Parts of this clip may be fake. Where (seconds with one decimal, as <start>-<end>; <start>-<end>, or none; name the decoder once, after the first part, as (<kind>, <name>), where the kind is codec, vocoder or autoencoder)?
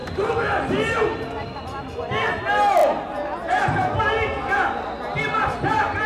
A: none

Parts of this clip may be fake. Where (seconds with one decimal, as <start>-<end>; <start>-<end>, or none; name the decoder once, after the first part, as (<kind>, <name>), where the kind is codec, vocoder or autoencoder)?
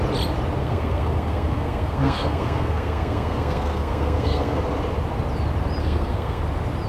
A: 0.6-4.6 (codec, SNAC); 5.8-6.4